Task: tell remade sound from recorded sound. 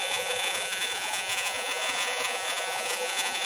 remade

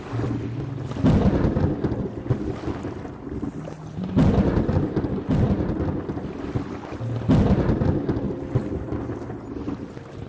recorded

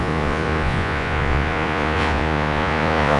remade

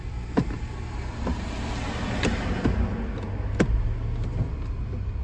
recorded